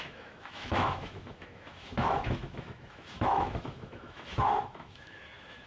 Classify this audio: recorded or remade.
remade